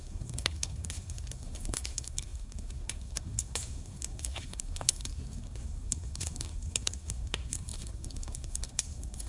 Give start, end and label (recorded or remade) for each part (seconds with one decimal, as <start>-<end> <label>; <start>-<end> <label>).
0.0-9.3 remade